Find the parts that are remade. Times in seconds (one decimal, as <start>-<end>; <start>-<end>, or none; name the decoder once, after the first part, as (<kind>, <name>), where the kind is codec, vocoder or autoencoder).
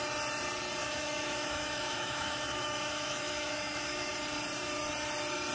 0.8-4.1 (autoencoder, DAC-VAE)